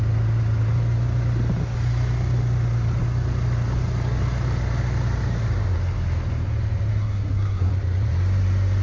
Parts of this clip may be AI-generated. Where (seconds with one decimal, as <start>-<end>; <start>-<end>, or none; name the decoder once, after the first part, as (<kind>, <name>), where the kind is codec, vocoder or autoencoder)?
6.9-7.7 (codec, SNAC)